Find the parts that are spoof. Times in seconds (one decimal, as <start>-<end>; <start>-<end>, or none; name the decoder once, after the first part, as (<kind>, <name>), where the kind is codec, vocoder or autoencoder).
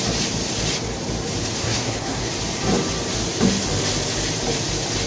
1.6-2.3 (codec, SNAC)